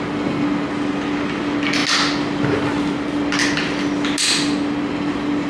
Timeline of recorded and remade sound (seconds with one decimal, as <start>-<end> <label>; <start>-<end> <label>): 0.0-5.5 recorded